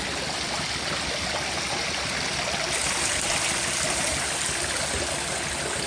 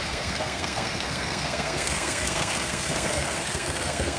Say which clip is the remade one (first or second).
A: second